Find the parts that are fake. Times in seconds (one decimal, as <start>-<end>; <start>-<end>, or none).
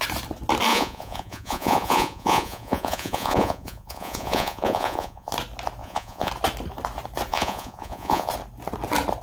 0.7-5.3; 5.8-6.3; 7.3-8.3